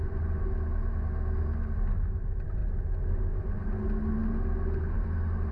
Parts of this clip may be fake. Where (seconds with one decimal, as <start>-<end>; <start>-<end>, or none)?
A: none